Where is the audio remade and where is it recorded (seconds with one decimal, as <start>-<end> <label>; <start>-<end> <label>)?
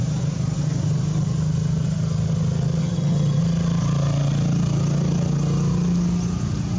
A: 0.0-2.8 recorded; 2.8-3.4 remade; 3.4-6.8 recorded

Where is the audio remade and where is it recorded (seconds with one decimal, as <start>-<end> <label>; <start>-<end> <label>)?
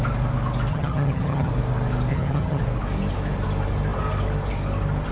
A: 0.0-0.7 recorded; 0.7-1.5 remade; 1.5-2.1 recorded; 2.1-2.6 remade; 2.6-5.1 recorded